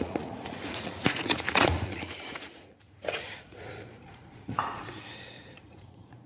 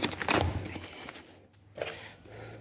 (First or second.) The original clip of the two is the second